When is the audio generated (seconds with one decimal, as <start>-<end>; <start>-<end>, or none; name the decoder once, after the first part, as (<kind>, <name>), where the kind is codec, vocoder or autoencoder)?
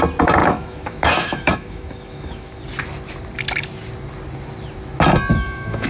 0.4-2.6 (autoencoder, DAC-VAE); 5.3-5.9